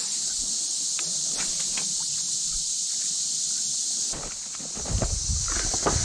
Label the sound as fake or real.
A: real